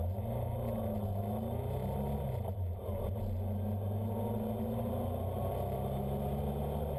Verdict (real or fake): real